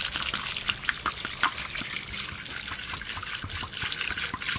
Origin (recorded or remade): recorded